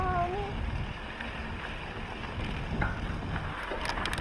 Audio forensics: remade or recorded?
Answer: recorded